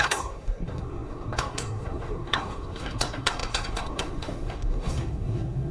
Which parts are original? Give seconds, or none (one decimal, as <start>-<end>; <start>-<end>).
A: none